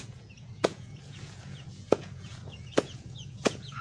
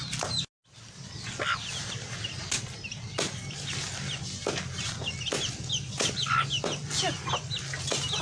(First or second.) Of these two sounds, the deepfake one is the first